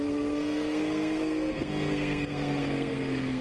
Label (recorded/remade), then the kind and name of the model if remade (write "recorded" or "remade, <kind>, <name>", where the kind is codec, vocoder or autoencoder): remade, codec, SNAC